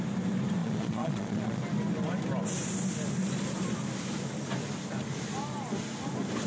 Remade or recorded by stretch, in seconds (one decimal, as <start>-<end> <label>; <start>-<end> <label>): 0.0-0.6 recorded; 0.6-1.6 remade; 1.6-6.5 recorded